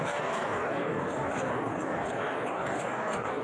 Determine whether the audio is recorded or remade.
remade